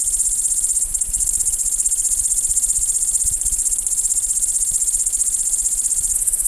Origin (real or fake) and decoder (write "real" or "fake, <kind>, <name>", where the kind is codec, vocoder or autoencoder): real